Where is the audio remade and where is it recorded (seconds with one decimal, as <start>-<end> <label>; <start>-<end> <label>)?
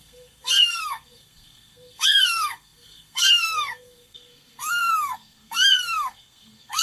0.0-6.8 remade